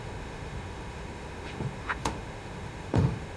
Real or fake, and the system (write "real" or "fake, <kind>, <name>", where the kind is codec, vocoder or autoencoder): fake, autoencoder, DAC-VAE